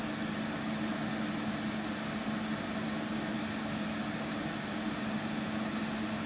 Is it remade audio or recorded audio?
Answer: recorded